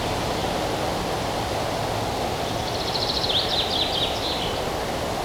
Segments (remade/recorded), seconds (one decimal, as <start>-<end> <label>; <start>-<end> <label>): 0.0-5.2 recorded

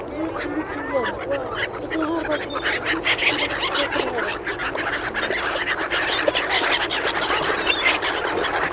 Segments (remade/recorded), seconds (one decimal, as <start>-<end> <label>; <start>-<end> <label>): 0.0-8.7 recorded

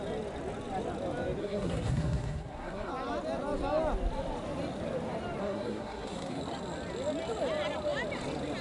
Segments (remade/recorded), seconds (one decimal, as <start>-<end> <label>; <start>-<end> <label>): 0.0-1.4 recorded; 1.4-2.9 remade; 2.9-5.4 recorded; 5.4-6.4 remade; 6.4-8.6 recorded

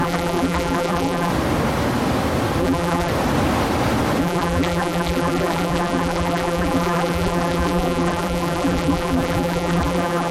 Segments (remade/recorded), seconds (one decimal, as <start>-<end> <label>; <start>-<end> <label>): 0.0-1.3 remade; 1.3-2.6 recorded; 2.6-3.1 remade; 3.1-4.2 recorded; 4.2-10.3 remade

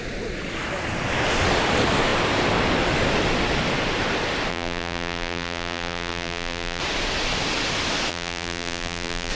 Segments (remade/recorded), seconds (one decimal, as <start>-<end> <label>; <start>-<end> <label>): 0.0-4.5 recorded; 4.5-6.8 remade; 6.8-8.1 recorded; 8.1-9.3 remade

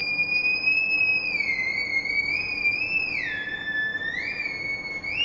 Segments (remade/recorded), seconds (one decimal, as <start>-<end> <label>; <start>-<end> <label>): 0.0-5.2 recorded

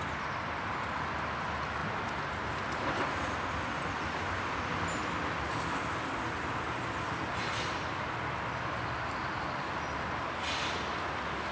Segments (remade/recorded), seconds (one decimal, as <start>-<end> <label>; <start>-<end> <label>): 0.0-11.5 recorded